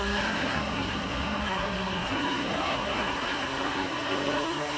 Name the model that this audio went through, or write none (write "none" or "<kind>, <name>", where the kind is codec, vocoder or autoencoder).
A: codec, SNAC